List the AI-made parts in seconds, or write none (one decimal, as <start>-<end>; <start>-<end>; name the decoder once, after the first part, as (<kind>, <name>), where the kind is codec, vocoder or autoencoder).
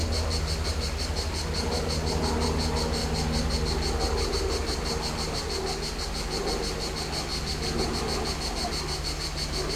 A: none